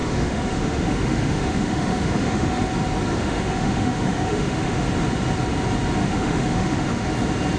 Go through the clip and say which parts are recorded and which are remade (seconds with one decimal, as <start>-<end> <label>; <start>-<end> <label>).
0.0-2.6 remade; 2.6-3.1 recorded; 3.1-4.9 remade; 4.9-6.0 recorded; 6.0-7.1 remade; 7.1-7.6 recorded